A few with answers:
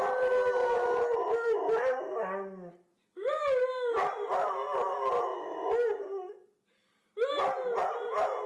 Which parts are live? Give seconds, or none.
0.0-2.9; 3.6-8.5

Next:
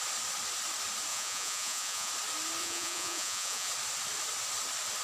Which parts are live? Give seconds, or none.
0.0-1.1; 2.1-2.6; 3.7-5.0

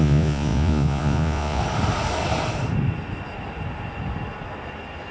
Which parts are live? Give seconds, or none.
1.6-5.1

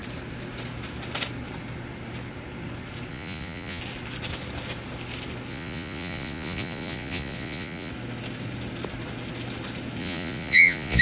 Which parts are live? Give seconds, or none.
0.0-3.1; 3.8-5.5; 7.9-10.0

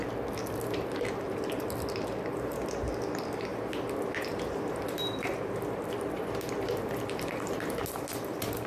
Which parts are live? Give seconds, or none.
0.0-8.7

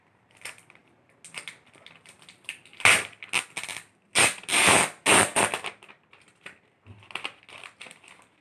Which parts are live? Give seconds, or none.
0.0-8.4

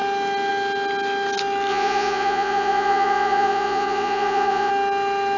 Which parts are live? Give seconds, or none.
0.0-1.7; 4.7-5.4